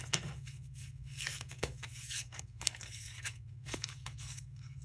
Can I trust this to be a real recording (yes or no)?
no